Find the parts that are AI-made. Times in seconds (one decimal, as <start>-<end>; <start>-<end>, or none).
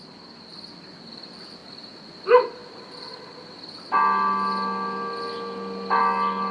1.6-2.1